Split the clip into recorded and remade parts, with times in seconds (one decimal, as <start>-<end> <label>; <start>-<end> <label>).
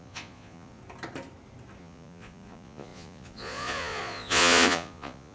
0.0-0.8 remade; 0.8-1.8 recorded; 1.8-5.3 remade